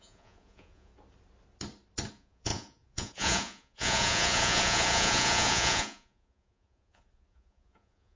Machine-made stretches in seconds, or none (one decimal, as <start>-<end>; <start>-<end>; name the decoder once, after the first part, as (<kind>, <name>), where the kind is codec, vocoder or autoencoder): 0.0-0.9 (vocoder, Vocos); 2.1-8.2